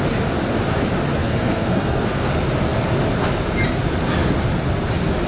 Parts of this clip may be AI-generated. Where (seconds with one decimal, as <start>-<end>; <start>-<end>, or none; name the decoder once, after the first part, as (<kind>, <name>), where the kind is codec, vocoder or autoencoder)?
1.2-2.3 (codec, SNAC)